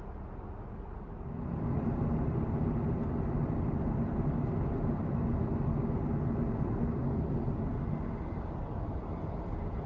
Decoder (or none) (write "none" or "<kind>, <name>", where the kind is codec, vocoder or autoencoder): none